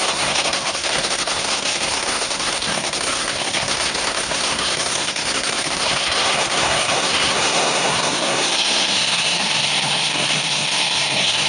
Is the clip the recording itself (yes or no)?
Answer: no